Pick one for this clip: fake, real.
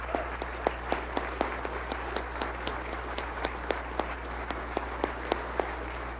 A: real